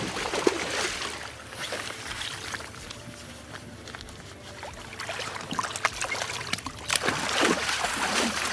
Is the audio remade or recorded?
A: recorded